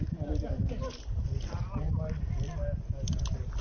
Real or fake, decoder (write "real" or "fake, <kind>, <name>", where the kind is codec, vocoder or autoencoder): real